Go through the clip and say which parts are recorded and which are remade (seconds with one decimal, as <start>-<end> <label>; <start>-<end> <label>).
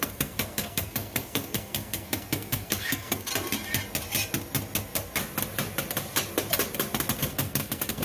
0.0-3.3 remade; 3.3-7.2 recorded; 7.2-8.0 remade